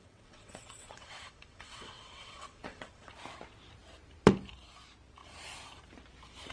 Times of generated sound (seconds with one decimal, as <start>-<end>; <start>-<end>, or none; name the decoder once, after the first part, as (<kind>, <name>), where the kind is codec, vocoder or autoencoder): 0.0-3.1 (vocoder, WaveNeXt)